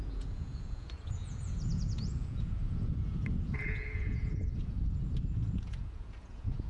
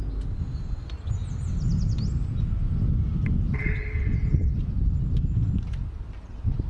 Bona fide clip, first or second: second